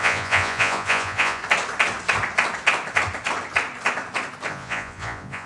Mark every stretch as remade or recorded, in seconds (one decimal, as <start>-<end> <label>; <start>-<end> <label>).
0.0-1.4 remade; 1.4-4.5 recorded; 4.5-5.5 remade